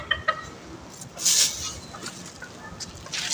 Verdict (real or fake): real